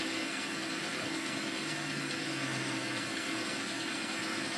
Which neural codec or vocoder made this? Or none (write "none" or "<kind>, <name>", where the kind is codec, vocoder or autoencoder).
codec, SNAC